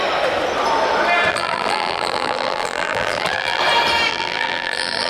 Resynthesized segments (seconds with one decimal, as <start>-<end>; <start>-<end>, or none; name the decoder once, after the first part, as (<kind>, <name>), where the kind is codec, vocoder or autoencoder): 1.3-3.6 (vocoder, BigVGAN v2); 4.1-5.1